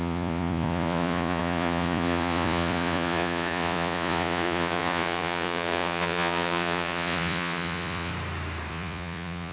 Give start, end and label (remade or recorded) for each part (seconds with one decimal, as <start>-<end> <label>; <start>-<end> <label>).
0.0-8.1 remade; 8.1-8.7 recorded; 8.7-9.5 remade